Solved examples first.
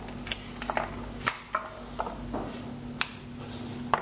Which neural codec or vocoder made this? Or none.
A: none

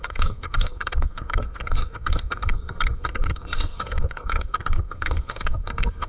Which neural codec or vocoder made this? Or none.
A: codec, SNAC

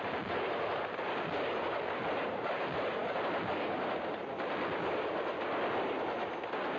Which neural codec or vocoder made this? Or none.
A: none